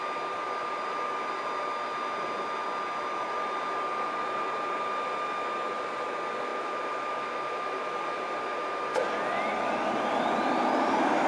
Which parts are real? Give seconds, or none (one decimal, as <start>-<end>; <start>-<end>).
0.0-11.3